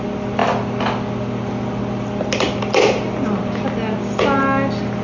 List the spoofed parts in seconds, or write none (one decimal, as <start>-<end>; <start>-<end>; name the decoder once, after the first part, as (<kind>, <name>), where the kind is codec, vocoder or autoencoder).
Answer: none